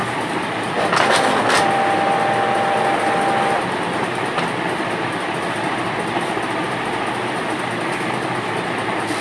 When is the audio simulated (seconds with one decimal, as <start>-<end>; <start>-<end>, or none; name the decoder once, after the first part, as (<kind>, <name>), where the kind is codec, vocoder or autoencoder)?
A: none